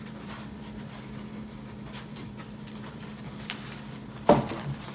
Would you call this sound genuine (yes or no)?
no